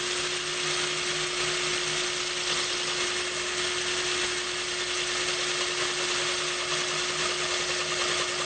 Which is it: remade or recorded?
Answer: recorded